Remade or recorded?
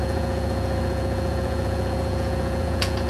remade